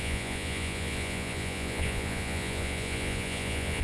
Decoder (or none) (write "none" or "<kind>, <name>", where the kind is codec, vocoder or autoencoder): vocoder, Vocos